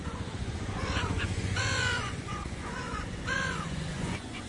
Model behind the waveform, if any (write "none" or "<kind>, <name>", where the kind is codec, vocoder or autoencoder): vocoder, Vocos